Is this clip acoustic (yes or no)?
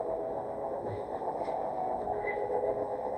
no